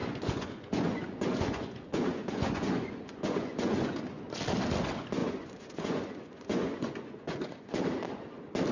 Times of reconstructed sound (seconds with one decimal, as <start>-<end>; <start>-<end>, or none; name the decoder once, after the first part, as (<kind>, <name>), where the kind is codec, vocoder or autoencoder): 0.0-4.2 (vocoder, Vocos); 5.2-7.7